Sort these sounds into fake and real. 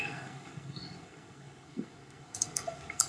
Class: fake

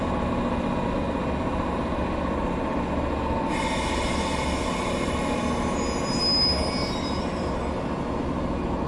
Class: real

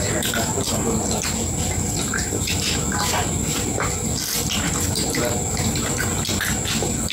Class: real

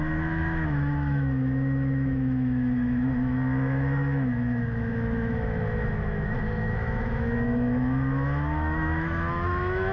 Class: fake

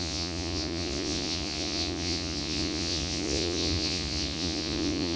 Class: fake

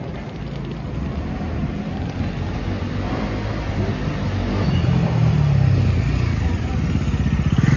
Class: real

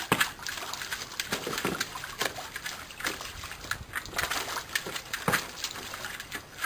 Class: real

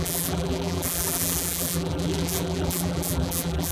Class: fake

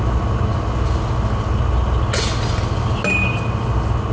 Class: real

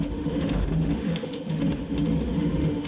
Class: fake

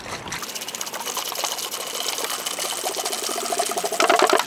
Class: real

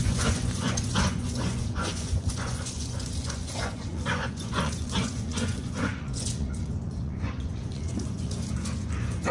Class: fake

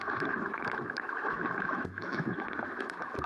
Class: fake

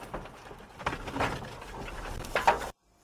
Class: real